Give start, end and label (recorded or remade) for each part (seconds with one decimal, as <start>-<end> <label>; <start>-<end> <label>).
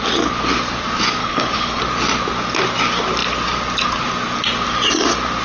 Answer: 0.0-1.2 recorded; 1.2-1.8 remade; 1.8-5.4 recorded